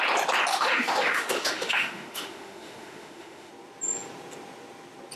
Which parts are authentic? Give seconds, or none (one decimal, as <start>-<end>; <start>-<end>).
0.0-0.5; 3.5-5.2